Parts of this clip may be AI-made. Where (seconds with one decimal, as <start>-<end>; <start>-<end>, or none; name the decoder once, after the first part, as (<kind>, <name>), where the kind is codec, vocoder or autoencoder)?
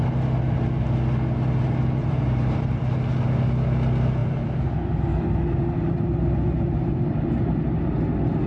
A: 2.0-2.8 (vocoder, BigVGAN v2); 4.2-7.5